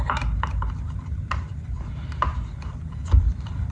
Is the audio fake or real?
fake